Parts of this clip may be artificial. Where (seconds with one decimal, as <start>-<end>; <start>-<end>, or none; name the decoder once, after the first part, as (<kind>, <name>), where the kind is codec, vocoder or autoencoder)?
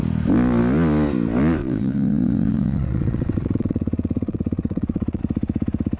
1.6-5.2 (vocoder, WaveNeXt)